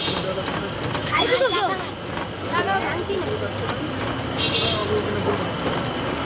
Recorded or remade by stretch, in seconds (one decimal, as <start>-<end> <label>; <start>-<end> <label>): 0.0-1.0 recorded; 1.0-1.9 remade; 1.9-6.2 recorded